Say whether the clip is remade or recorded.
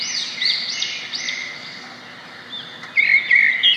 recorded